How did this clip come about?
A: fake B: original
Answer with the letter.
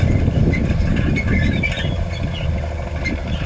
B